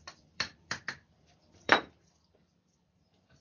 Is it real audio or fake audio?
fake